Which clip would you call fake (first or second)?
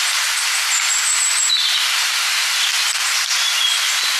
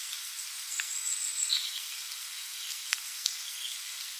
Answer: second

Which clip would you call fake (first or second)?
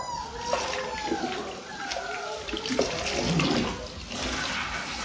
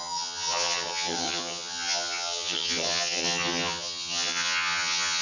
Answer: second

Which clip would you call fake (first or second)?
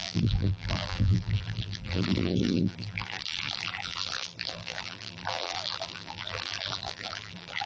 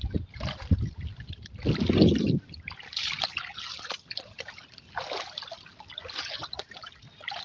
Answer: first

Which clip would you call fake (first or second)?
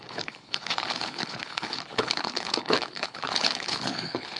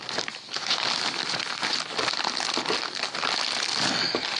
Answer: first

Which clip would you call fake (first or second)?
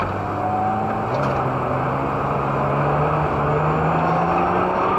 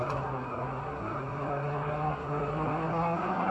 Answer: second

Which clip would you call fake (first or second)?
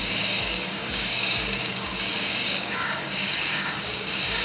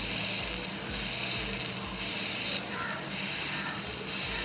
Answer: first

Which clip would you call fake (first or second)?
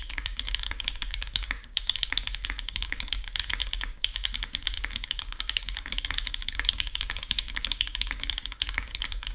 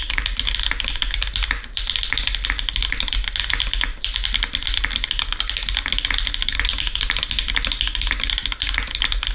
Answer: first